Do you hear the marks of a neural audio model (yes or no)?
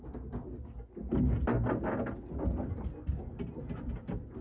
no